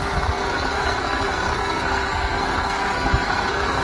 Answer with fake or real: fake